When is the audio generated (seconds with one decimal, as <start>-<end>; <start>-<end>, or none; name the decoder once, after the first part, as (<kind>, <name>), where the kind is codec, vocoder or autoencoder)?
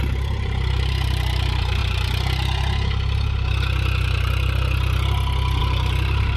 0.0-1.8 (vocoder, BigVGAN v2); 5.6-6.4